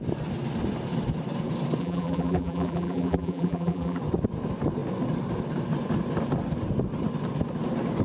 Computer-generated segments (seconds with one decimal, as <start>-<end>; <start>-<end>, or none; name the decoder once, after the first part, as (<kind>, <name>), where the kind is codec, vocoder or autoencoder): 1.8-4.0 (vocoder, BigVGAN v2)